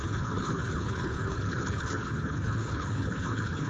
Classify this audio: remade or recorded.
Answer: remade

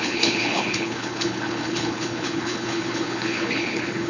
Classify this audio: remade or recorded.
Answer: remade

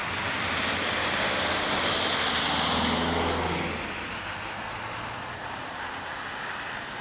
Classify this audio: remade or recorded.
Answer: recorded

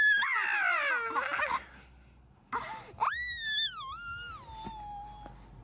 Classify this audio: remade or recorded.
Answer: recorded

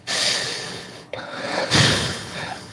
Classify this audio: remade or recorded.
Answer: remade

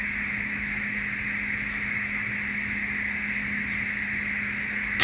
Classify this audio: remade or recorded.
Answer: recorded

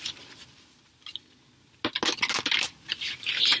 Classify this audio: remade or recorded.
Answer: recorded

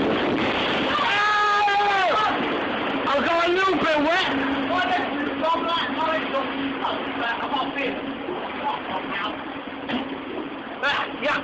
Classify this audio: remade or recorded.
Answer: recorded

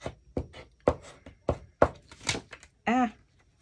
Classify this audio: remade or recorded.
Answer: recorded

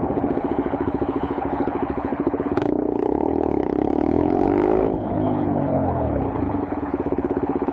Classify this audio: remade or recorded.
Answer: remade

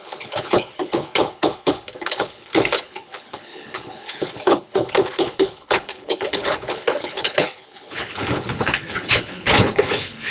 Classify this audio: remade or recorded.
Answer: remade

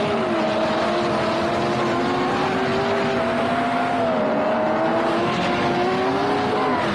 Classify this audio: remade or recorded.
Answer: recorded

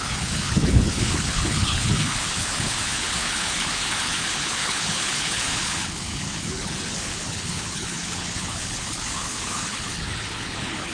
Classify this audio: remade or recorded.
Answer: remade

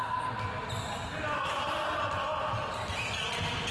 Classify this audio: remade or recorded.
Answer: recorded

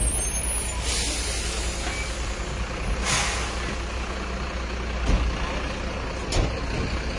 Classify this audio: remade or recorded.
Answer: recorded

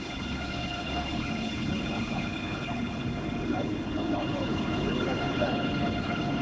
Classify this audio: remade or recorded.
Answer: remade